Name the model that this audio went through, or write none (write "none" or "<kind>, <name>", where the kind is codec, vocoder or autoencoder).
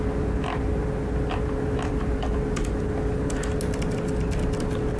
none